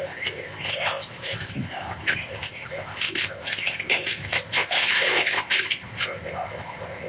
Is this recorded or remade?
remade